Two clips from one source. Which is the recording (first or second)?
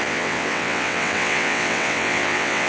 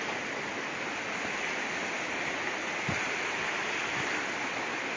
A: second